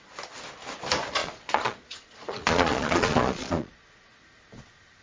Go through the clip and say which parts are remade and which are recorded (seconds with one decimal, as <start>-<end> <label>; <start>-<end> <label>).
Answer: 0.0-1.2 recorded; 1.2-4.2 remade; 4.2-5.0 recorded